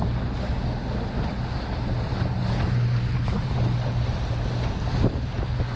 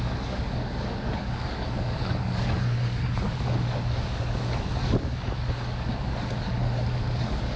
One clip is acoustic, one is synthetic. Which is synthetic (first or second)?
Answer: second